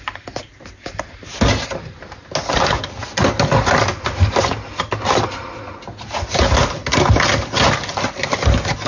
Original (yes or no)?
yes